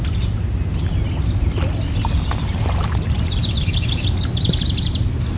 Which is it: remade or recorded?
recorded